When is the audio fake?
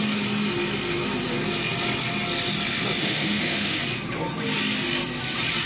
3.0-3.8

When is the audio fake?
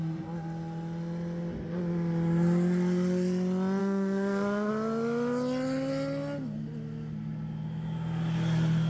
3.8-4.7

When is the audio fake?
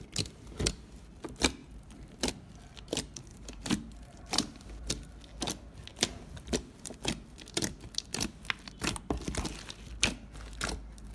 1.6-2.3; 3.3-4.9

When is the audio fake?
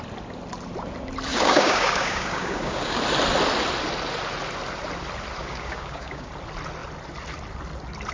1.3-3.0; 5.4-6.3